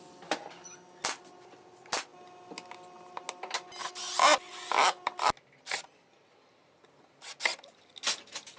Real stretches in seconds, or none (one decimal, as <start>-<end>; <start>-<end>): 0.0-8.6